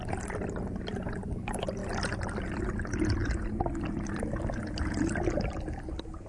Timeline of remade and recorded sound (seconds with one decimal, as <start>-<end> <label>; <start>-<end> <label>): 0.0-6.3 recorded

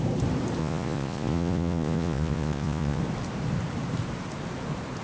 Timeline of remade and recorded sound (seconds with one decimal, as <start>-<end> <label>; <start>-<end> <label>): 0.0-0.6 recorded; 0.6-3.0 remade; 3.0-5.0 recorded

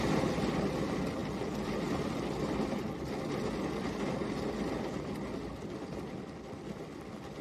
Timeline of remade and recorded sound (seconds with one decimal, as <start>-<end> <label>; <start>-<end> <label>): 0.0-7.4 recorded